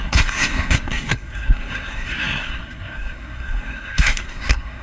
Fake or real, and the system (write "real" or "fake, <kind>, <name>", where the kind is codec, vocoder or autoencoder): fake, codec, SNAC